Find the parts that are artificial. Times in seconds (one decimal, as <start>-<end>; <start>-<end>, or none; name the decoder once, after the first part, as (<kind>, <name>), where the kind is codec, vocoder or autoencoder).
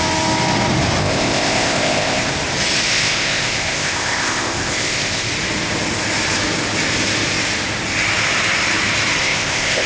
1.0-2.3 (codec, ZipCodec); 2.9-5.3; 9.2-9.9